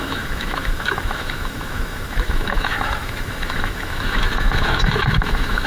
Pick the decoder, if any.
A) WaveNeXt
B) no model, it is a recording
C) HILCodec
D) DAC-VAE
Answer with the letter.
D